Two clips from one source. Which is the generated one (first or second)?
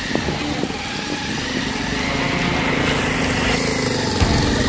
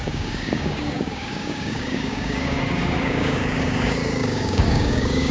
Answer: second